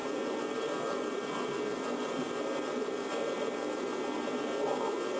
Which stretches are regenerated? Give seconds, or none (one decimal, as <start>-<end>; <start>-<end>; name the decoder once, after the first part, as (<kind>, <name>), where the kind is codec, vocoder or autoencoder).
0.0-3.1 (vocoder, BigVGAN v2)